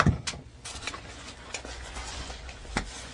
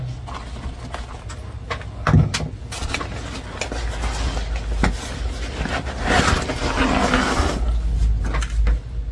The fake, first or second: first